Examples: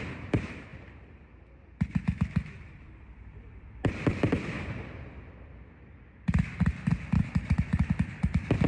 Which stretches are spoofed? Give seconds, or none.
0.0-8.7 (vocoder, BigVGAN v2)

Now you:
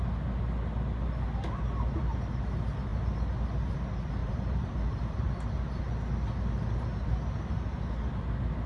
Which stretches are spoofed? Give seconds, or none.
4.2-5.8 (vocoder, BigVGAN v2)

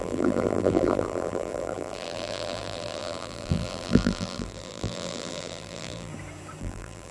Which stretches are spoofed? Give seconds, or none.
0.0-6.1 (vocoder, BigVGAN v2); 6.6-7.1